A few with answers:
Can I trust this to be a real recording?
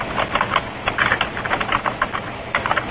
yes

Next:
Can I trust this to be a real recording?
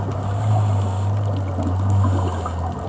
yes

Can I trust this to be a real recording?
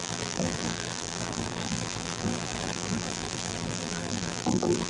no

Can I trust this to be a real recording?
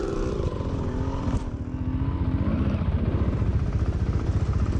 no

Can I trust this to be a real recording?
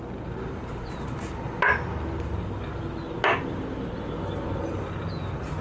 yes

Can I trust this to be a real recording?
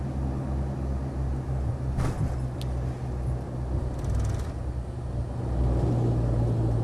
yes